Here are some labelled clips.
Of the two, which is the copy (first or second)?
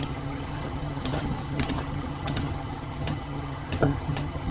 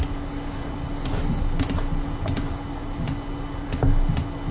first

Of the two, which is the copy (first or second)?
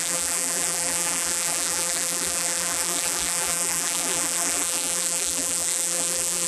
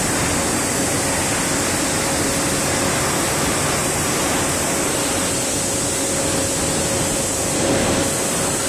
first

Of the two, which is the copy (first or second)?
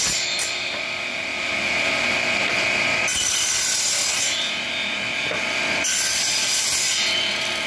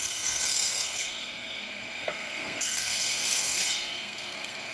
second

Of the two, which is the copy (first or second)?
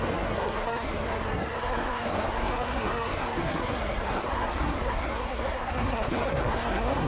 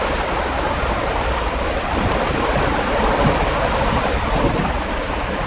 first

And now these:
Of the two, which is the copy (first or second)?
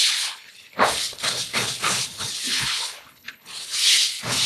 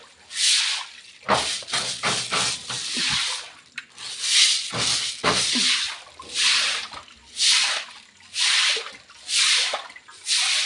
first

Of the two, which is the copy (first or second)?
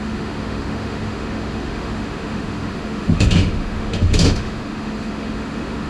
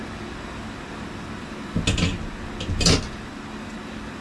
first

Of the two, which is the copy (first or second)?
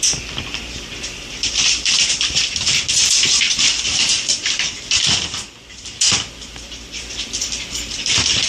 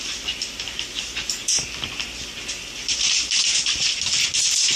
first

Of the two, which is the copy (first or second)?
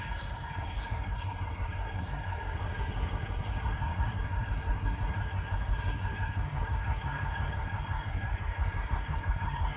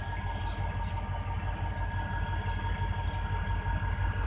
first